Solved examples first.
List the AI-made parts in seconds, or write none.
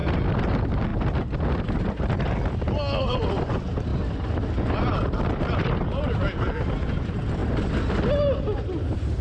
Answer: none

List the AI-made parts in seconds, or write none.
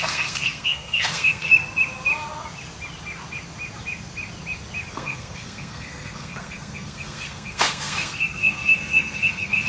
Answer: 0.0-1.5; 4.9-9.7